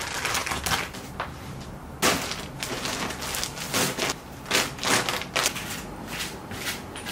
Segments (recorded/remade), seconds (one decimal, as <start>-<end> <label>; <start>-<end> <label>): 0.0-0.4 recorded; 0.4-1.7 remade; 1.7-7.1 recorded